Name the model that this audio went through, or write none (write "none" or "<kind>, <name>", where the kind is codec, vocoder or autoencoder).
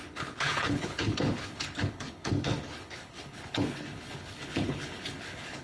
codec, HILCodec